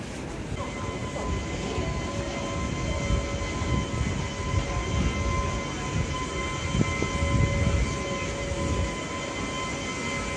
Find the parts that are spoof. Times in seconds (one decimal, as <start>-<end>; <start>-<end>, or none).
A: none

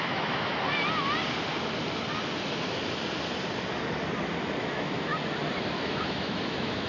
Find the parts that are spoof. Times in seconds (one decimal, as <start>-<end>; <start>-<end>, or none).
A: 0.0-0.5; 4.6-5.1; 5.7-6.9